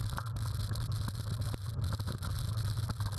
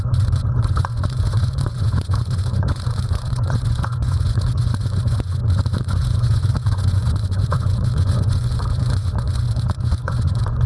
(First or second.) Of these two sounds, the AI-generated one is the second